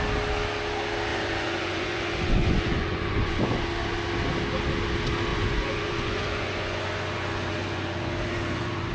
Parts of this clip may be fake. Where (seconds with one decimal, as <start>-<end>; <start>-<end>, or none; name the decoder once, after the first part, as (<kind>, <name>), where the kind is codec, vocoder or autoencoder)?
1.1-3.6 (vocoder, Vocos); 5.3-8.9